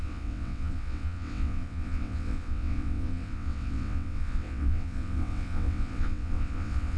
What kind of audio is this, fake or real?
fake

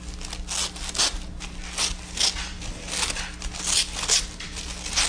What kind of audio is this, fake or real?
real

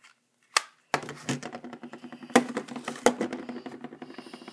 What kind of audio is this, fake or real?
real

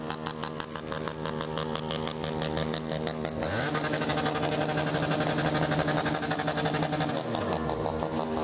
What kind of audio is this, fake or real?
real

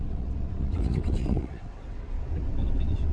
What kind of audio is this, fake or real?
fake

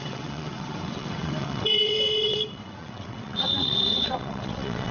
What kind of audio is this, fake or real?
fake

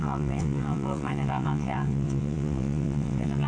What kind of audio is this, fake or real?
fake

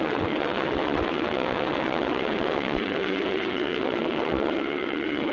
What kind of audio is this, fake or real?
fake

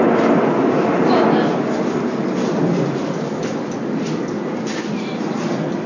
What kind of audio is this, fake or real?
real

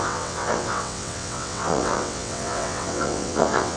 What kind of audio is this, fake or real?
fake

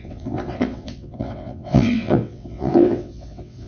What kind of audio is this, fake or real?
fake